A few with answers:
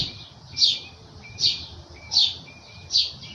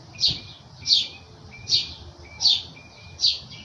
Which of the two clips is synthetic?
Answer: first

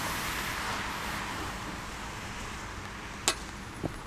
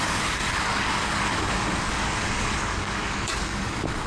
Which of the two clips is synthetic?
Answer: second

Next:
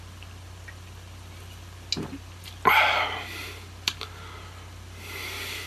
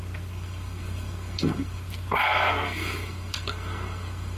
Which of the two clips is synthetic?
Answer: second